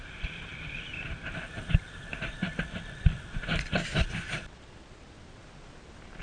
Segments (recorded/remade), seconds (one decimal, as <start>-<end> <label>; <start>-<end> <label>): 0.0-0.5 remade; 0.5-1.3 recorded; 1.3-5.4 remade; 5.4-6.2 recorded